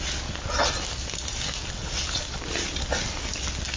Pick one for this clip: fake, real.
real